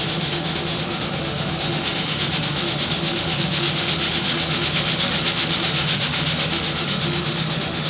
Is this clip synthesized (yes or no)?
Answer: yes